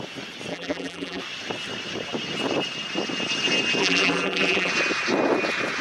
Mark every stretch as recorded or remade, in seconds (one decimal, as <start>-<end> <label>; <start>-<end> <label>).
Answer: 0.0-0.5 recorded; 0.5-1.2 remade; 1.2-3.8 recorded; 3.8-4.7 remade; 4.7-5.8 recorded